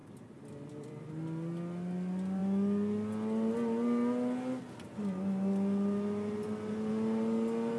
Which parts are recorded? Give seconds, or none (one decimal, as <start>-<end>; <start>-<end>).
1.1-7.8